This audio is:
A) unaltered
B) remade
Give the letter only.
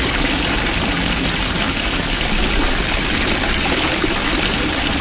A